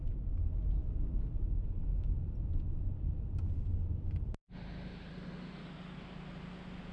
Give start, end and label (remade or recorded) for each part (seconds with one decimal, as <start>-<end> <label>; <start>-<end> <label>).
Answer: 0.0-6.9 recorded